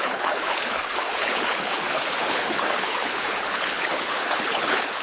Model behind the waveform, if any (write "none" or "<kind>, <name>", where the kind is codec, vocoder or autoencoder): codec, HILCodec